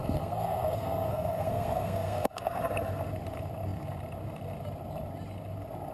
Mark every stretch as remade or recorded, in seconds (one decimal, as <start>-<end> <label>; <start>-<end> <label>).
0.0-2.6 remade; 2.6-5.9 recorded